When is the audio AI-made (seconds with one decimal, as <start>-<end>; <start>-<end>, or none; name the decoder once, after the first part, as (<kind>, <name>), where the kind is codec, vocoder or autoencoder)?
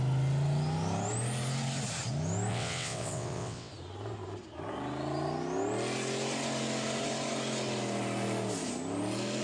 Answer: 2.5-3.7 (vocoder, WaveNeXt)